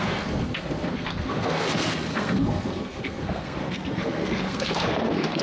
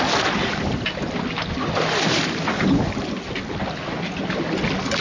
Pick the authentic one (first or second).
second